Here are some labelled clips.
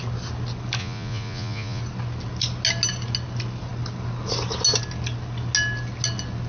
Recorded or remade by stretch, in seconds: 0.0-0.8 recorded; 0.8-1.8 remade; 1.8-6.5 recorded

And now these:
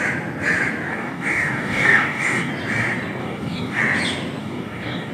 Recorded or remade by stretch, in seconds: 0.0-0.9 recorded; 0.9-2.5 remade; 2.5-3.2 recorded; 3.2-3.8 remade; 3.8-4.4 recorded; 4.4-5.1 remade